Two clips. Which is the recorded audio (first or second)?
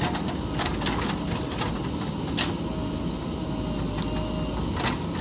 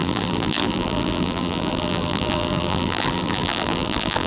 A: first